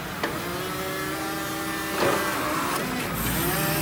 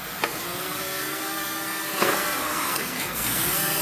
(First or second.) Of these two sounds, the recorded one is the first